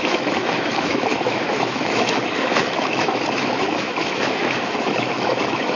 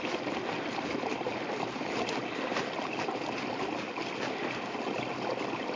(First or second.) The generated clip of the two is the first